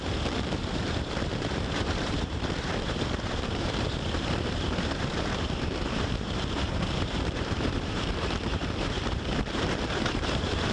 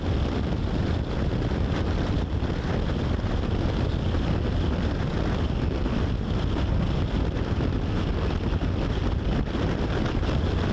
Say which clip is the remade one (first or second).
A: first